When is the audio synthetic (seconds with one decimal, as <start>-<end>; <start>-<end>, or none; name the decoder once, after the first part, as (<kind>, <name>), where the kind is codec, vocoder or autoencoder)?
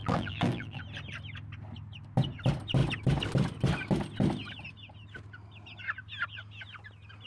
0.0-0.8 (vocoder, BigVGAN v2)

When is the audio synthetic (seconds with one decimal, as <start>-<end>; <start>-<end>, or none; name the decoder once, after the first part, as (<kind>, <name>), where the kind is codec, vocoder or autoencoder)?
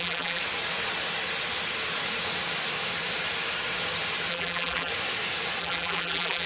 0.0-0.4 (vocoder, BigVGAN v2); 4.3-4.9; 5.6-6.5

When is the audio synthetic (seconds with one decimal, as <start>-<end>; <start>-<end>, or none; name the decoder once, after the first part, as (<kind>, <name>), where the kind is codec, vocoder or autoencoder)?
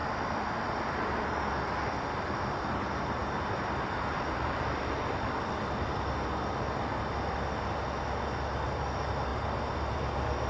3.2-4.8 (vocoder, BigVGAN v2); 9.3-10.0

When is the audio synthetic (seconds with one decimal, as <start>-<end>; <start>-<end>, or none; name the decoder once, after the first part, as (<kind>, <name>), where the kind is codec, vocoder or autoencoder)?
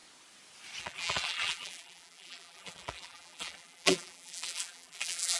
0.8-5.4 (vocoder, BigVGAN v2)